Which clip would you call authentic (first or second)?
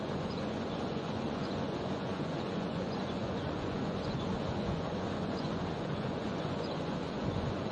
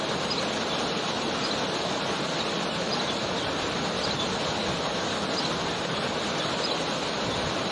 second